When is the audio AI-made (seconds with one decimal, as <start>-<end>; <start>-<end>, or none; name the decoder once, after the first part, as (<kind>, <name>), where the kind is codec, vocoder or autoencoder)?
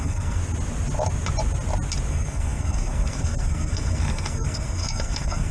0.0-0.4 (codec, SNAC); 2.1-5.5